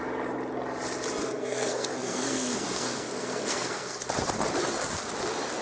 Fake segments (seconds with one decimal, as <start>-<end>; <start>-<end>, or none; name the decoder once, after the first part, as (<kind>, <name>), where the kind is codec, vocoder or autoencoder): 1.2-4.0 (codec, SNAC)